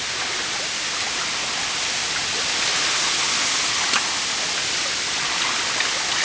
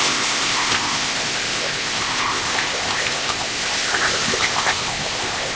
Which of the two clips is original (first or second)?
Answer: first